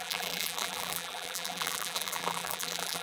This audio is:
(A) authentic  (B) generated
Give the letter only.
B